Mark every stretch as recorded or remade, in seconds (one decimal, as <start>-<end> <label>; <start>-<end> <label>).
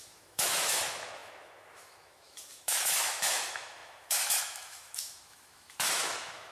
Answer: 0.0-6.5 remade